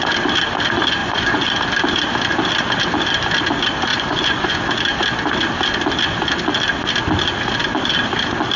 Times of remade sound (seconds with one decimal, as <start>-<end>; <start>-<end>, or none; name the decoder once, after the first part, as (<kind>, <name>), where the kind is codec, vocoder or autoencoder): 1.0-1.6 (vocoder, Vocos); 3.9-4.7